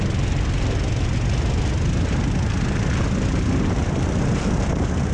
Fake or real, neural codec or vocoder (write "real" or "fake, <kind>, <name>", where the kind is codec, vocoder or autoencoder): real